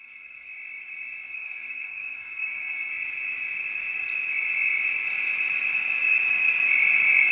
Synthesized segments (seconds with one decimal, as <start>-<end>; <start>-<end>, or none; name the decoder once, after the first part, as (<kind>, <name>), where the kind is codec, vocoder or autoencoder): 0.0-0.5 (codec, SNAC); 1.3-2.9